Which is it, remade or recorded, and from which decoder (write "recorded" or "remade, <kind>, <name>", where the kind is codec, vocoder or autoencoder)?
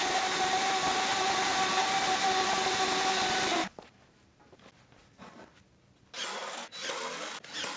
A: recorded